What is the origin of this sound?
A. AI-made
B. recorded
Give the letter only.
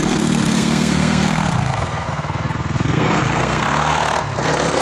A